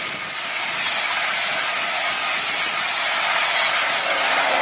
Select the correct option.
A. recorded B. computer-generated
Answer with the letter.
A